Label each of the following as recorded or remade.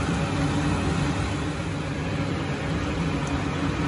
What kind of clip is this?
recorded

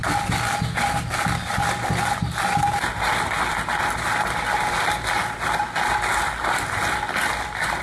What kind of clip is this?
recorded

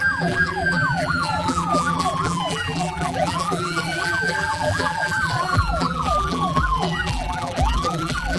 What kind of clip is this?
remade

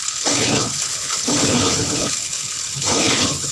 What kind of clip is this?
remade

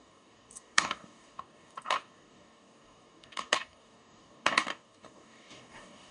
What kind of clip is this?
remade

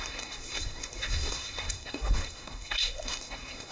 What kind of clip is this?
remade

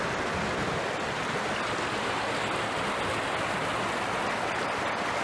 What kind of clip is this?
recorded